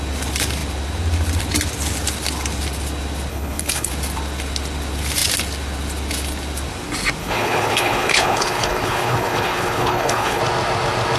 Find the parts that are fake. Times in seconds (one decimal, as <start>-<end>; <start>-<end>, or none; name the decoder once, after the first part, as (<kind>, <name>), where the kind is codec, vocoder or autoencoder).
3.3-3.9 (codec, HILCodec); 7.2-10.4